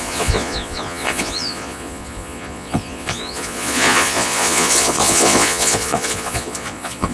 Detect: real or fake fake